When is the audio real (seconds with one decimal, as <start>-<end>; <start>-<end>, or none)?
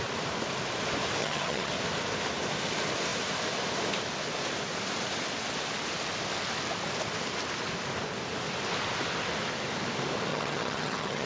0.0-1.2; 1.7-10.3